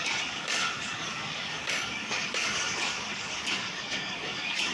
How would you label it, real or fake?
fake